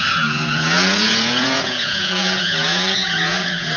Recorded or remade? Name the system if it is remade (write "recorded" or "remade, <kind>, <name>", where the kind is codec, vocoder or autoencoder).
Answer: remade, vocoder, Vocos